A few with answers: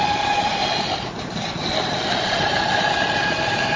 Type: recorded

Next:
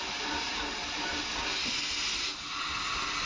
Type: recorded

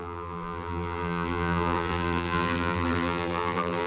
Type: remade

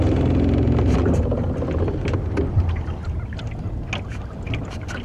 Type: recorded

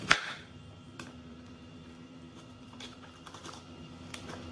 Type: remade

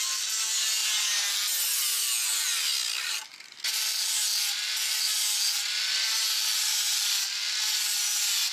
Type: recorded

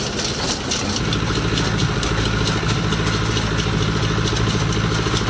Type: recorded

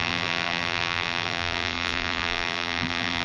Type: remade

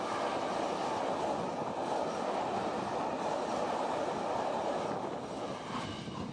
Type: recorded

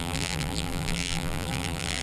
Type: remade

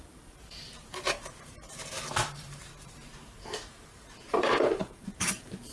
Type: remade